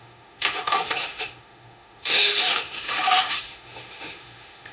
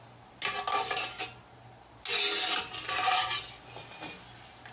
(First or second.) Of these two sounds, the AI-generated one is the first